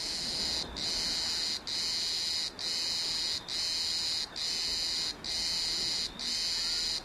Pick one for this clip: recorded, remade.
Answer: recorded